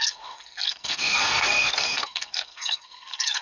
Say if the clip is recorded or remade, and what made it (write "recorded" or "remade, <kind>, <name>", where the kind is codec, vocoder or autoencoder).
remade, codec, SNAC